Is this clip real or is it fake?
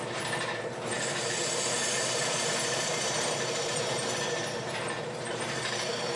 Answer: fake